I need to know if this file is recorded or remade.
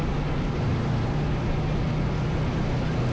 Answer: recorded